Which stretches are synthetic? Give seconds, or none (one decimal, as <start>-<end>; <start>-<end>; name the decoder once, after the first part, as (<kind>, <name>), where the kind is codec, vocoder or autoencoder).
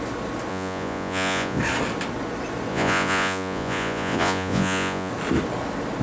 0.5-1.6 (vocoder, Vocos); 2.7-5.1